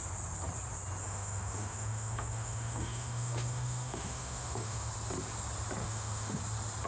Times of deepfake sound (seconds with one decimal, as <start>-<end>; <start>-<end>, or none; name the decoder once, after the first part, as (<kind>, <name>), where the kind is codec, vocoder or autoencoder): 1.0-4.9 (autoencoder, DAC-VAE); 5.8-6.4